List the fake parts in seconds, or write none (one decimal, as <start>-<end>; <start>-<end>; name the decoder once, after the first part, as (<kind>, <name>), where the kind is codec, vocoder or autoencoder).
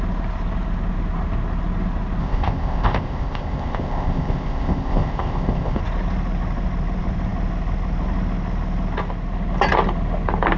2.2-5.8 (codec, ZipCodec)